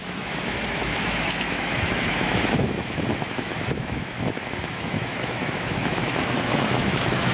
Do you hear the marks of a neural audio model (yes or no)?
yes